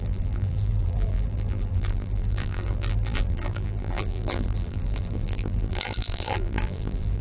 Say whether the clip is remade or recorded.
remade